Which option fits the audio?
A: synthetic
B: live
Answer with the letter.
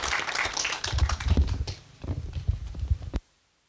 B